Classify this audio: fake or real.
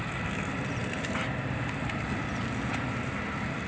real